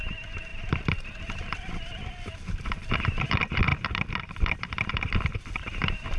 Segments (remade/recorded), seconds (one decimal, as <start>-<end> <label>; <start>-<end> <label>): 0.0-3.7 remade; 3.7-4.3 recorded; 4.3-6.2 remade